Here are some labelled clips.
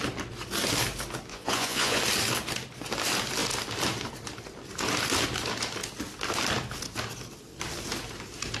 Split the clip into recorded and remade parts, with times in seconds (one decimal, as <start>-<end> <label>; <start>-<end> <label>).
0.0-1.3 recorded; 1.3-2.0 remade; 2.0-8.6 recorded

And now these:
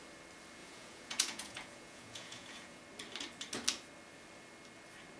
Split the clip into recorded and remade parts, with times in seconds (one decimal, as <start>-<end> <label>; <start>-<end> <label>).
0.0-0.6 recorded; 0.6-2.8 remade; 2.8-5.2 recorded

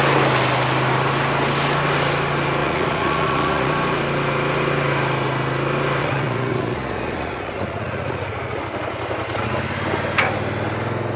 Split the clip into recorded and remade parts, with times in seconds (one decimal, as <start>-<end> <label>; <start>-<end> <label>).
0.0-2.6 recorded; 2.6-3.7 remade; 3.7-6.0 recorded; 6.0-8.6 remade; 8.6-11.2 recorded

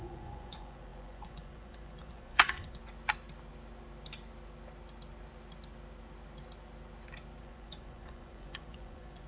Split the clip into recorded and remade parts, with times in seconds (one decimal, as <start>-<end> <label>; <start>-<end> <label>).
0.0-2.8 remade; 2.8-7.4 recorded; 7.4-9.3 remade

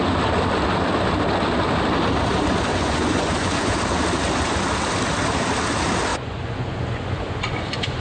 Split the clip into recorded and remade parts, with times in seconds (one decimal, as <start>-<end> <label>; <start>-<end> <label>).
0.0-2.7 recorded; 2.7-3.7 remade; 3.7-6.1 recorded; 6.1-8.0 remade

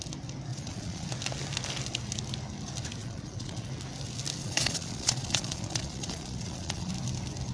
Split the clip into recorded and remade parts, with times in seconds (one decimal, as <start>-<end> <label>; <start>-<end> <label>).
0.0-0.5 recorded; 0.5-1.1 remade; 1.1-3.0 recorded; 3.0-3.7 remade; 3.7-4.4 recorded; 4.4-6.9 remade; 6.9-7.5 recorded

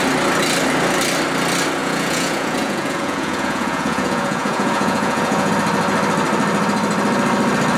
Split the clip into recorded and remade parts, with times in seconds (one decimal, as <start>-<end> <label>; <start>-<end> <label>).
0.0-1.8 recorded; 1.8-5.5 remade; 5.5-7.8 recorded